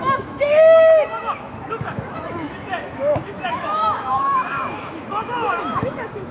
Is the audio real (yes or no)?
no